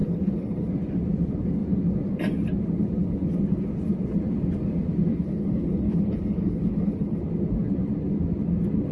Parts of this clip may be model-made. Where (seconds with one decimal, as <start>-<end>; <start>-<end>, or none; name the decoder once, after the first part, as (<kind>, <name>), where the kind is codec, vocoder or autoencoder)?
0.0-0.7 (codec, HILCodec); 5.1-7.2